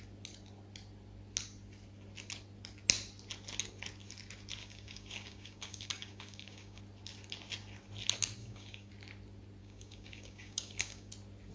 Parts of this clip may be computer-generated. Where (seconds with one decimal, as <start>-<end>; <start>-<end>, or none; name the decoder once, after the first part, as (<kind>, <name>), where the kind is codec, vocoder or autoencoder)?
4.6-6.8 (codec, DAC); 8.4-8.9; 9.6-11.1